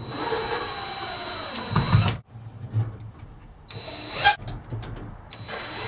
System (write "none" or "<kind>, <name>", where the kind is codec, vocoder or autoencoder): none